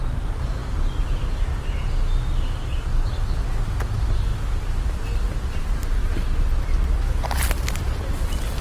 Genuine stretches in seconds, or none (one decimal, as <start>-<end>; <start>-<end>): 0.0-8.6